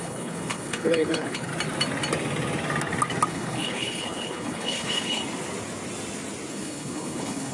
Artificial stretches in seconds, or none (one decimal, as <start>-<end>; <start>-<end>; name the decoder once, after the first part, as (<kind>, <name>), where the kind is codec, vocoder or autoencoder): 0.0-1.5 (codec, HILCodec); 3.3-5.2; 6.5-7.5